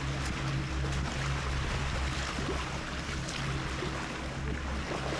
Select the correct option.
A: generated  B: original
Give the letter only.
B